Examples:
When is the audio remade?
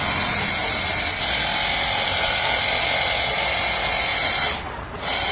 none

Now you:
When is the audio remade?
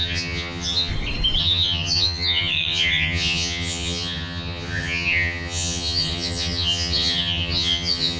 0.0-0.9 (vocoder, HiFi-GAN); 1.4-8.2